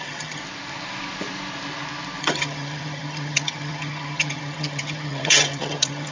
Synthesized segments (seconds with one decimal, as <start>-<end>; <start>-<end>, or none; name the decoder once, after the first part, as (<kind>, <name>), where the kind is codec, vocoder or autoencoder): 0.0-0.4 (vocoder, HiFi-GAN); 2.2-6.1